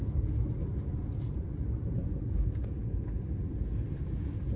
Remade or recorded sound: recorded